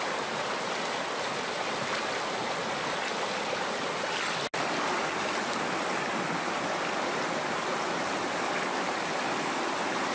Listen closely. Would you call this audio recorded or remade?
recorded